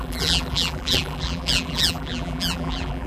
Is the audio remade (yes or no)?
yes